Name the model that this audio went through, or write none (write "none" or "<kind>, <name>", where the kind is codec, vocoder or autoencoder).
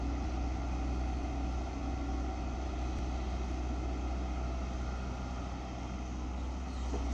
none